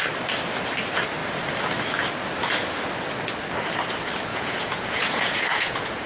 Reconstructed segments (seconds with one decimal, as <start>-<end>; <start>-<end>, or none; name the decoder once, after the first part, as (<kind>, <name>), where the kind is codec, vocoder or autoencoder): 4.3-6.1 (vocoder, Vocos)